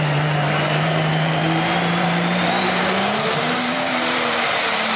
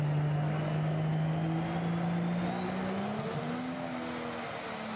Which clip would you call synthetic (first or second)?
first